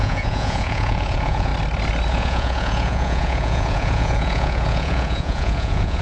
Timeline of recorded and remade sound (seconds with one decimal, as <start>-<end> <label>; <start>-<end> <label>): 0.0-1.5 remade; 1.5-2.1 recorded; 2.1-6.0 remade